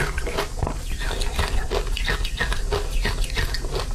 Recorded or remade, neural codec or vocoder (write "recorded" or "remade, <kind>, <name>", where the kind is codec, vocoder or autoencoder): recorded